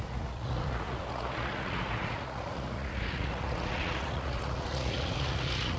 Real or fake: fake